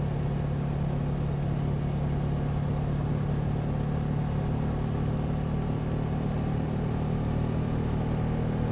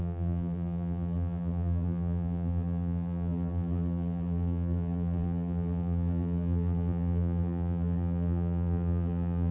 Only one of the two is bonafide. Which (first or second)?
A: first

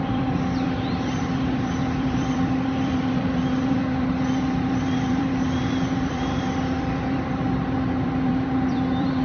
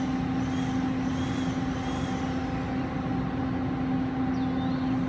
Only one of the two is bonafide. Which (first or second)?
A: second